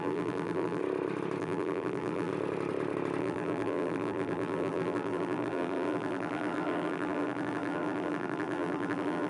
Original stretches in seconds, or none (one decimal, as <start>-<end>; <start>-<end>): 0.8-1.4; 2.3-3.2